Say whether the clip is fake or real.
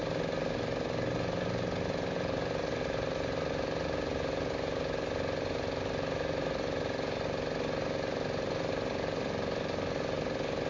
real